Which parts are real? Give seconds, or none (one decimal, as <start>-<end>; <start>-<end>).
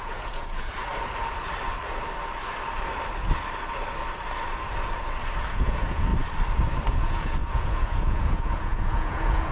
0.7-5.5; 6.1-6.9